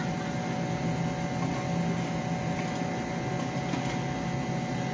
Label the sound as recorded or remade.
recorded